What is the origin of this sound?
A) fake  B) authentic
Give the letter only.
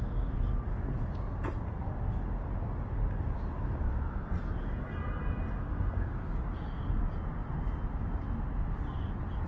B